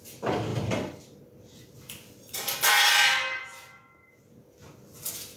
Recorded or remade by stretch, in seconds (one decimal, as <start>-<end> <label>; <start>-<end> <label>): 0.0-0.5 recorded; 0.5-1.2 remade; 1.2-5.4 recorded